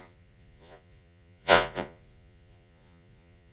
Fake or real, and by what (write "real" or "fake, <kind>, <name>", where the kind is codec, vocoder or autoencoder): fake, vocoder, Vocos